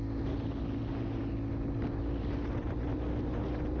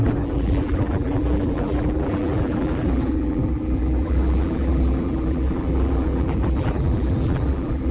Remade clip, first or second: second